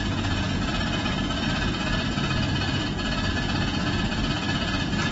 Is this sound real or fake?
fake